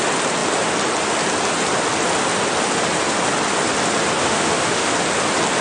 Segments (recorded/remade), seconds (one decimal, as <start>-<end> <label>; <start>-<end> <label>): 0.0-4.2 recorded; 4.2-4.9 remade; 4.9-5.6 recorded